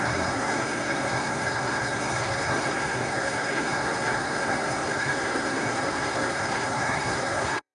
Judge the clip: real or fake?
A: fake